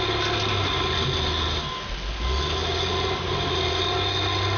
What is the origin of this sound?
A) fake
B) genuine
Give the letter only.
B